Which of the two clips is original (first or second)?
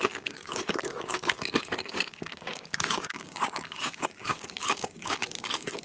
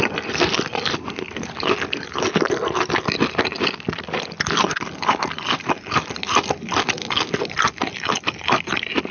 second